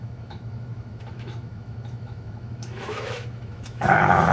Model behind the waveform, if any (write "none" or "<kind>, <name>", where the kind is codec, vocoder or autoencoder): autoencoder, DAC-VAE